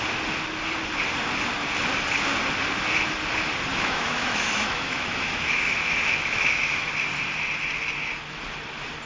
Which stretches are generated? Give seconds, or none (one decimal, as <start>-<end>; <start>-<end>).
3.7-6.9